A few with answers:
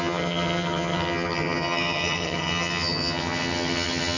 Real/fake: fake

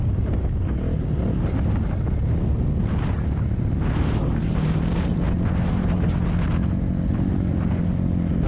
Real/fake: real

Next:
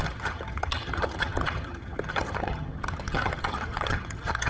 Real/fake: fake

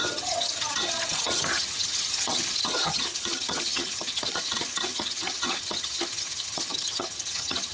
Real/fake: fake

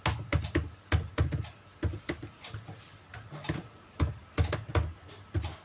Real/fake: real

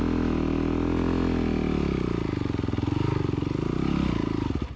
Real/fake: real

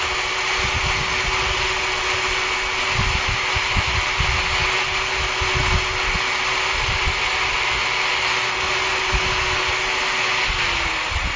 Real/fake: real